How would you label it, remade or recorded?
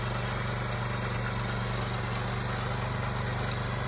recorded